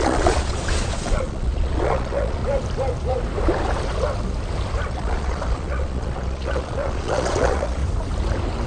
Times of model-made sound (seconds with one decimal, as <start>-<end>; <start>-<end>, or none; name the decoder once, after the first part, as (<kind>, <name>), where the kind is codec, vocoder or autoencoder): 0.0-2.4 (vocoder, Vocos); 4.9-7.8